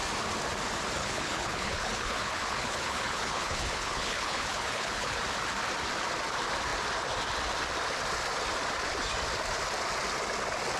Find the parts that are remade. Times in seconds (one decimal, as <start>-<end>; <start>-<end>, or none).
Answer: 1.0-5.2